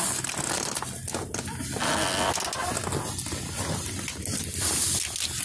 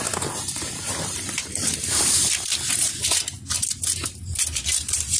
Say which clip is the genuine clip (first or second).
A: first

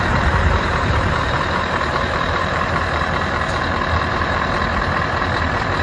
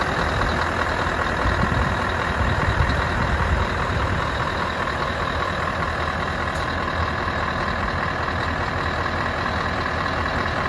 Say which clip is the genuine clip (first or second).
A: second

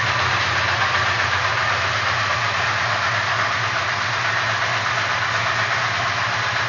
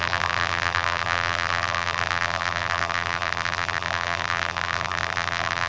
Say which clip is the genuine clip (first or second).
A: first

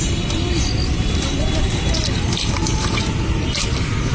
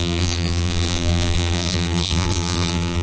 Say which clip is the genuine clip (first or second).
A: first